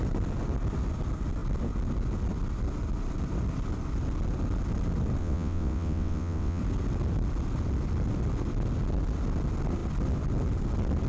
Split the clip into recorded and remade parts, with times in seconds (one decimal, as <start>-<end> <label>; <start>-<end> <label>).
0.0-5.2 recorded; 5.2-6.6 remade; 6.6-11.1 recorded